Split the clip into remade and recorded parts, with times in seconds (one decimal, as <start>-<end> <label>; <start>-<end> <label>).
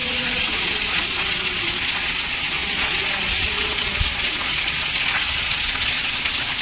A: 0.0-6.6 remade